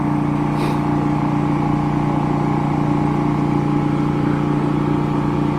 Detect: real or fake real